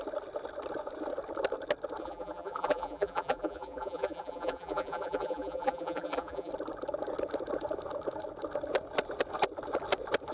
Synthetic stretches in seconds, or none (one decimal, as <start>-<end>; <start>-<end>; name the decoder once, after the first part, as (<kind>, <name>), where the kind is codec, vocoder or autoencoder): 2.0-6.5 (vocoder, BigVGAN v2)